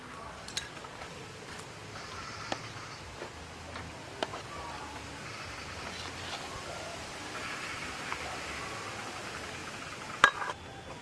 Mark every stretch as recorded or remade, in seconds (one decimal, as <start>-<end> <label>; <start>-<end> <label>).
0.0-11.0 recorded